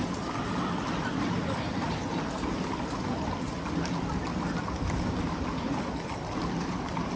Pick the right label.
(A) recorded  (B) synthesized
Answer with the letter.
B